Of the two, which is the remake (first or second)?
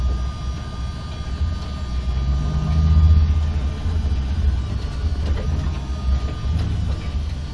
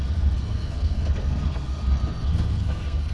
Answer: second